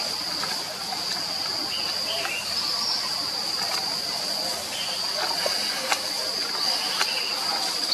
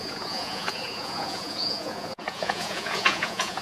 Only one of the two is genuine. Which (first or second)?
first